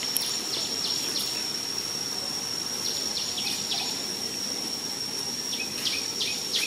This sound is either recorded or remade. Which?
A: recorded